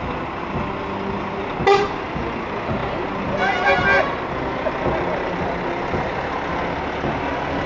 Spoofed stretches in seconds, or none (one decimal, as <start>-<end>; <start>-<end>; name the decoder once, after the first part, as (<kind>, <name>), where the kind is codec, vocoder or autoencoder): none